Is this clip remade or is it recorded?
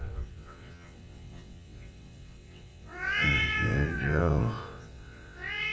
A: remade